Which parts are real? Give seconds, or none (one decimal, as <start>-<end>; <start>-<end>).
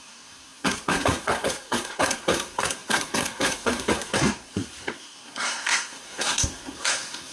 none